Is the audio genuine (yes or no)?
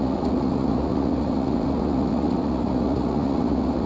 no